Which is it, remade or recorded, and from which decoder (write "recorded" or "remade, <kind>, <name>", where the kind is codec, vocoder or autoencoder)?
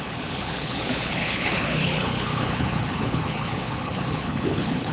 remade, codec, HILCodec